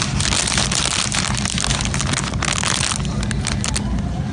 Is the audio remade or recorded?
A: recorded